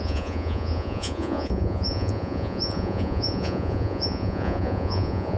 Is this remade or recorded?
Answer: remade